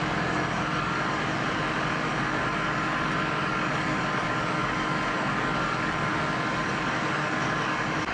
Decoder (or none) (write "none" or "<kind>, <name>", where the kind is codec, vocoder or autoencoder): codec, DAC